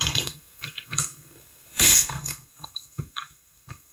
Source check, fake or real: fake